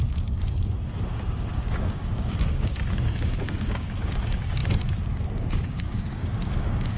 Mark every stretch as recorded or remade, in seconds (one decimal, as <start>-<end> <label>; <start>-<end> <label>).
0.0-7.0 remade